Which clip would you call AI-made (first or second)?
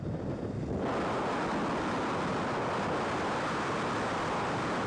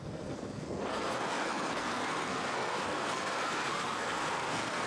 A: second